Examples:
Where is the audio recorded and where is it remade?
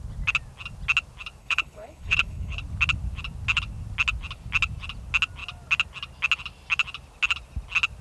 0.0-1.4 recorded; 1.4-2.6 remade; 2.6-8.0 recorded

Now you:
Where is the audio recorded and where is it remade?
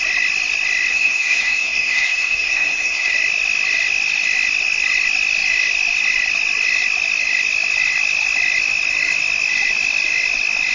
0.0-0.9 recorded; 0.9-3.1 remade; 3.1-10.7 recorded